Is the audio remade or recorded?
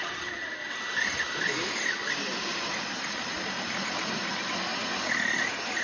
recorded